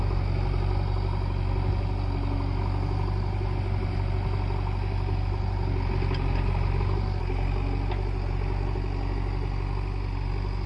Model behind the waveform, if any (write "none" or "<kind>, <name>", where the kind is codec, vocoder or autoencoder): none